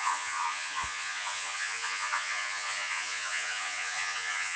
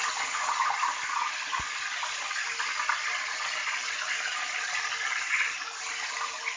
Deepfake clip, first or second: first